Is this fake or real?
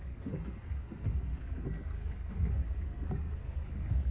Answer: fake